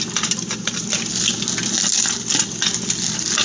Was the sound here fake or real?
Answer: real